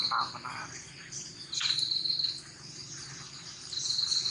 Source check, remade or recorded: recorded